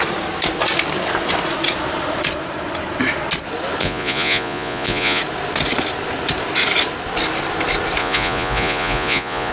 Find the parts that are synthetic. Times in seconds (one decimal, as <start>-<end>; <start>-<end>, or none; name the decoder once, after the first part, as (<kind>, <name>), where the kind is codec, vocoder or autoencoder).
3.8-5.2 (vocoder, Vocos); 8.0-9.5